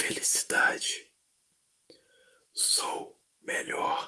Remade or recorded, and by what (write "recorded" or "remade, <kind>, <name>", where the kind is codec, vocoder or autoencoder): remade, autoencoder, DAC-VAE